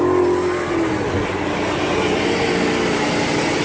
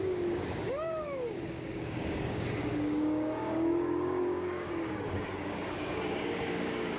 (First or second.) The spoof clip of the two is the second